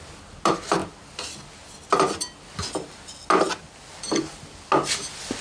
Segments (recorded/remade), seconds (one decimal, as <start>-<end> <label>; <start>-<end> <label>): 0.0-5.4 recorded